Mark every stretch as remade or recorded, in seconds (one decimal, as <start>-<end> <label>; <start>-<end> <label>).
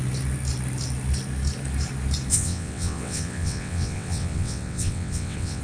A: 0.0-2.3 recorded; 2.3-5.6 remade